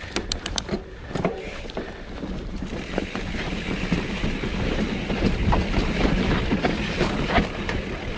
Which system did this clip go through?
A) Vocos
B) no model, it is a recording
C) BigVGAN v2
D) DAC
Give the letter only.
C